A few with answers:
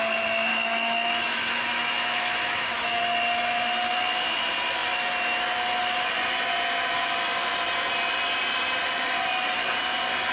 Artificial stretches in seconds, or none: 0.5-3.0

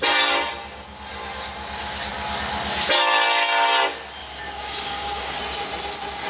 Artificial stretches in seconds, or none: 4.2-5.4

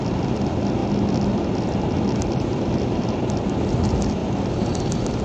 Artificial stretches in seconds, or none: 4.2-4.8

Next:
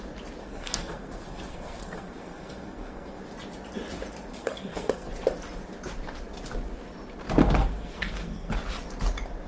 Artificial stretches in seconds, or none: 0.4-3.2; 4.3-5.1; 7.4-8.5